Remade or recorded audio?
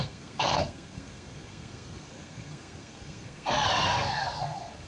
remade